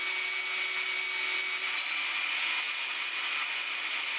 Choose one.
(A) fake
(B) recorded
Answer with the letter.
B